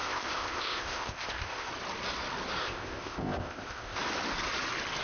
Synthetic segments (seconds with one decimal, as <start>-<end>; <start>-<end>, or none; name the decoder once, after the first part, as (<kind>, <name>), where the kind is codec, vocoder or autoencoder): 0.0-1.7 (codec, ZipCodec); 2.6-4.0